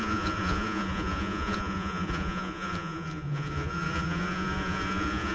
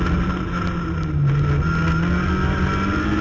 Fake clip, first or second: first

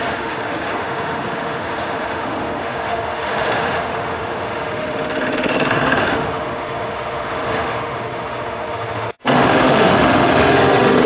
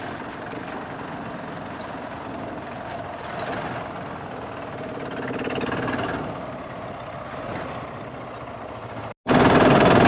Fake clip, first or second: first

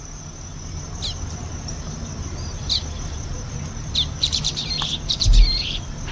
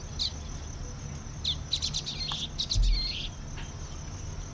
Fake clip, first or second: first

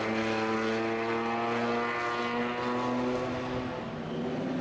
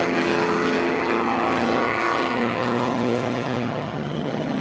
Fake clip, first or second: second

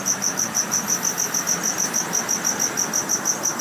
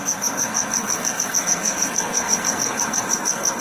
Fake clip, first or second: second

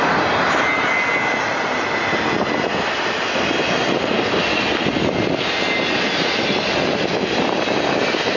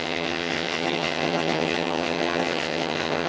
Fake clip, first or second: second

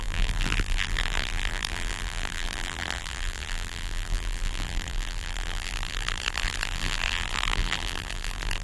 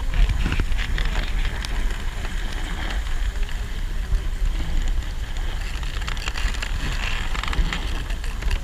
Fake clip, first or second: first